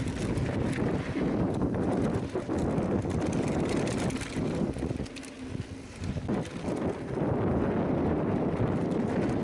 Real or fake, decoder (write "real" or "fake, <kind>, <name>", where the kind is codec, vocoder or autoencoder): real